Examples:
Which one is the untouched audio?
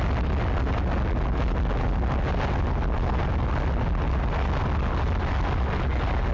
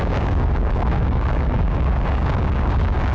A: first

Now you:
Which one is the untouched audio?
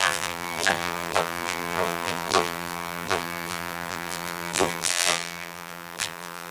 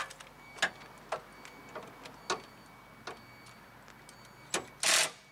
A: second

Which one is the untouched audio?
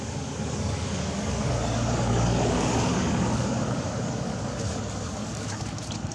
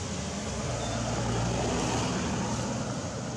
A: second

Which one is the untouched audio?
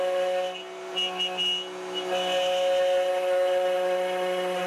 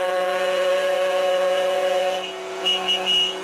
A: first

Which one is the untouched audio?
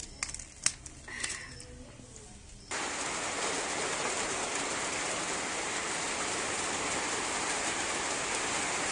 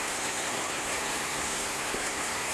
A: first